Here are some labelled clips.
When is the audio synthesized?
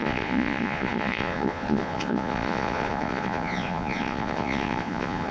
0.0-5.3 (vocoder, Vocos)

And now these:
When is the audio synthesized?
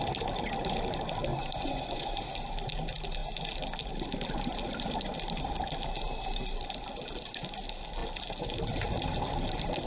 1.3-2.1 (vocoder, Vocos)